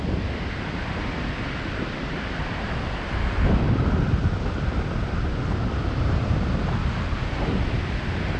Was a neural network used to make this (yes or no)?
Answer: no